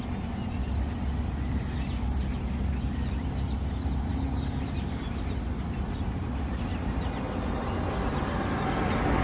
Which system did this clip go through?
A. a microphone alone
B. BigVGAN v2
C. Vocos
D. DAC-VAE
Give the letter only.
A